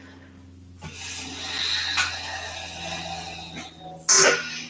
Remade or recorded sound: recorded